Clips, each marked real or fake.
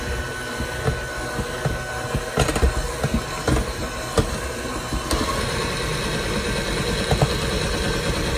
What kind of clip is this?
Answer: real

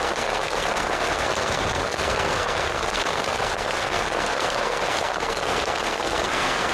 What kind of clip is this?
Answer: fake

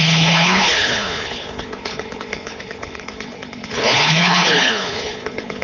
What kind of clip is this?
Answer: fake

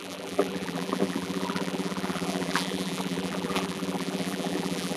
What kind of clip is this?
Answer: fake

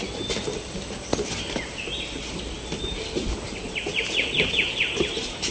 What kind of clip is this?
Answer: real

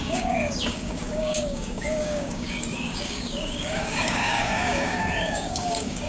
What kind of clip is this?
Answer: fake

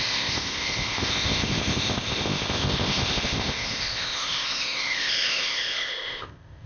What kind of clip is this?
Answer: fake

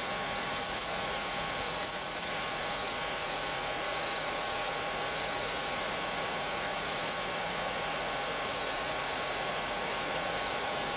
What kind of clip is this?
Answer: fake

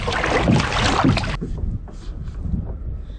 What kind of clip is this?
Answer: real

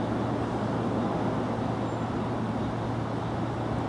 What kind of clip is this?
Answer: real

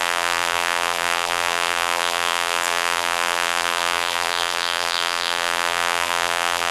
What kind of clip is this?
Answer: fake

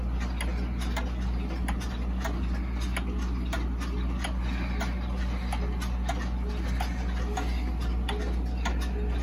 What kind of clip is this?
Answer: real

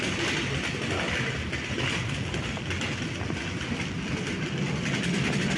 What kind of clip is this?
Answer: real